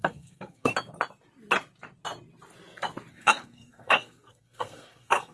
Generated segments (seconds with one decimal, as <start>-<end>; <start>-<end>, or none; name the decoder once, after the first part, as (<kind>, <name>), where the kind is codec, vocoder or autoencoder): 0.0-0.7 (codec, SNAC); 3.1-5.3